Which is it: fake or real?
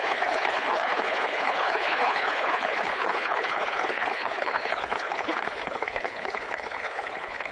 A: fake